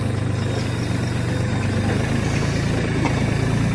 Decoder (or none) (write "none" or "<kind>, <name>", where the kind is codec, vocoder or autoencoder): none